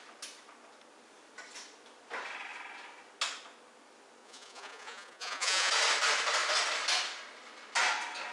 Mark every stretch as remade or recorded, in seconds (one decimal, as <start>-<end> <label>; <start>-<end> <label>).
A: 0.0-4.2 recorded; 4.2-5.7 remade; 5.7-8.3 recorded